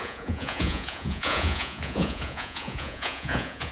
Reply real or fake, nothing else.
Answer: fake